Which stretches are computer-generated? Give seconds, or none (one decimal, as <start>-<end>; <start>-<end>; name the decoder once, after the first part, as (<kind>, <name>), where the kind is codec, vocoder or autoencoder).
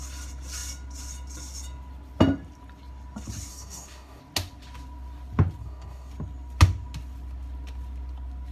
3.5-4.2 (codec, DAC); 5.6-6.1